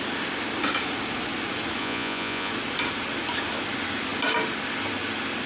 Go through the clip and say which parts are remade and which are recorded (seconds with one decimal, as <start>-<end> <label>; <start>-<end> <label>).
0.0-1.8 recorded; 1.8-2.5 remade; 2.5-5.5 recorded